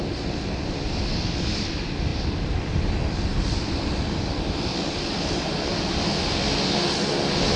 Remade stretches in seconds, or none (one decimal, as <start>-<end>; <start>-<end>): none